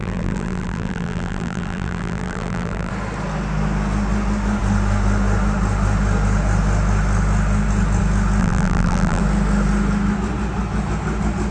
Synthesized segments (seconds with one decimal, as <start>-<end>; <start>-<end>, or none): 0.0-2.9; 8.4-9.2